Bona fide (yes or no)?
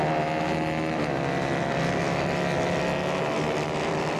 yes